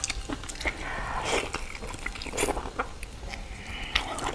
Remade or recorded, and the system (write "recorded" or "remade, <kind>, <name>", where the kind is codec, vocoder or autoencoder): recorded